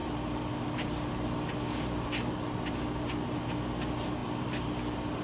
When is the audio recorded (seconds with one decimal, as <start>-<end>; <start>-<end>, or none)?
0.0-4.2; 4.8-5.2